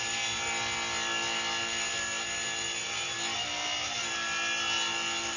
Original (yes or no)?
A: yes